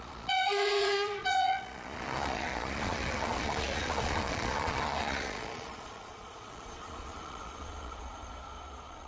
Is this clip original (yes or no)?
no